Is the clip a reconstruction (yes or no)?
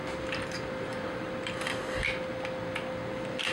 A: no